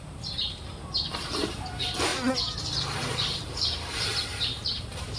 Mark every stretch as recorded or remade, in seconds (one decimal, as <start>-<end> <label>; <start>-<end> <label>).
0.0-2.1 remade; 2.1-3.1 recorded; 3.1-5.2 remade